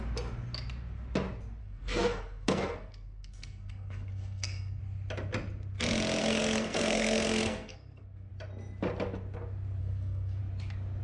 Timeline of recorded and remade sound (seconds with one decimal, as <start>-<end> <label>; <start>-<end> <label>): 0.0-1.6 recorded; 1.6-4.8 remade; 4.8-6.2 recorded; 6.2-8.3 remade; 8.3-9.8 recorded; 9.8-10.4 remade; 10.4-11.0 recorded